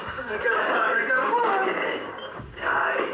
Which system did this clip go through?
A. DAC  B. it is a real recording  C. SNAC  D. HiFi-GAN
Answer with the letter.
A